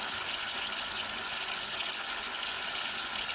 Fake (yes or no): yes